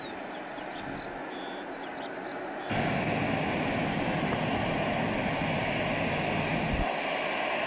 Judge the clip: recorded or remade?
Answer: recorded